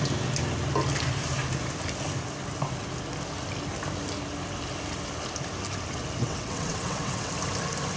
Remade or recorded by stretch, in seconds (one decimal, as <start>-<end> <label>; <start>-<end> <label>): 0.0-6.2 recorded; 6.2-7.3 remade; 7.3-8.0 recorded

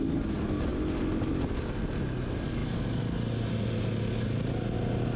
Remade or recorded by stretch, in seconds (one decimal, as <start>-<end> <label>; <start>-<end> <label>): 0.0-5.2 recorded